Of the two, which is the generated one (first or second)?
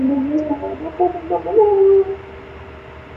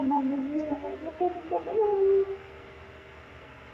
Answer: second